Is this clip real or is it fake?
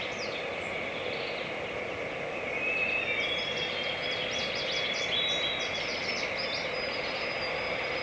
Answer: real